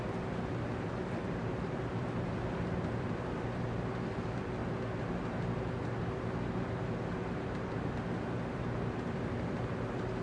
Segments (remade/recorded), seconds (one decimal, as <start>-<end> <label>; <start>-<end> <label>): 0.0-4.6 remade; 4.6-9.3 recorded; 9.3-10.2 remade